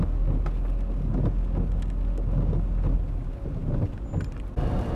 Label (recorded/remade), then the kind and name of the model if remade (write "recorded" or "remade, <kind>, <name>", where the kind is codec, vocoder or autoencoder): recorded